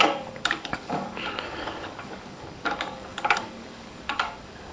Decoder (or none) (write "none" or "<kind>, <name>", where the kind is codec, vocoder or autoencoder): codec, DAC